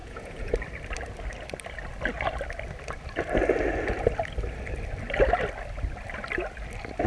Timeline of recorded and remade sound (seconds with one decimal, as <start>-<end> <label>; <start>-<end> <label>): 0.0-0.5 remade; 0.5-7.1 recorded